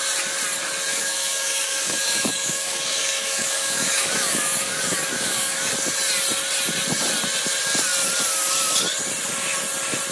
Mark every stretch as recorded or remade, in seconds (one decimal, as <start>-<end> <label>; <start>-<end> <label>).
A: 0.0-0.9 recorded; 0.9-5.7 remade; 5.7-10.1 recorded